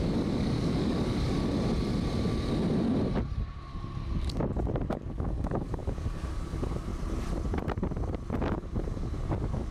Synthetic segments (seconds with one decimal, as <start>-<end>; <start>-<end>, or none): 0.0-1.4; 4.9-6.9; 8.4-9.7